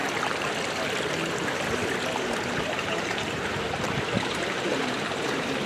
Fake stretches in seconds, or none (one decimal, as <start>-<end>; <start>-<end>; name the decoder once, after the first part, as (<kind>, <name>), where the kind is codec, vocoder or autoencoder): 1.1-1.8 (vocoder, BigVGAN v2); 2.7-5.7